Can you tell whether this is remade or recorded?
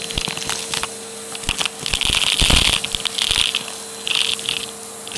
recorded